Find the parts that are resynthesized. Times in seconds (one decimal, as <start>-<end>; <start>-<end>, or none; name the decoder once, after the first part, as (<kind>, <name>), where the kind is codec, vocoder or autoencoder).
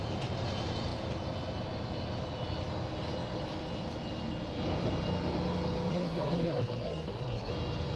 5.9-7.5 (codec, SNAC)